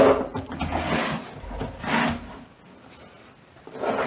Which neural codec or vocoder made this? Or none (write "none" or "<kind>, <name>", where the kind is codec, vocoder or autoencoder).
none